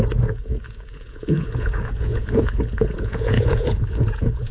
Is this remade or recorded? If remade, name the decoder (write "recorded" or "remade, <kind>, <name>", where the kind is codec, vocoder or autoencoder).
remade, vocoder, Vocos